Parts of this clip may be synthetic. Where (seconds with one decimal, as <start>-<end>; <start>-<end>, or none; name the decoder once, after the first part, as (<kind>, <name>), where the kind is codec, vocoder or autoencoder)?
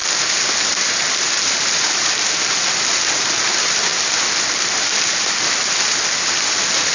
none